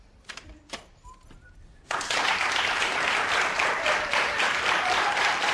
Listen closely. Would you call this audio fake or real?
fake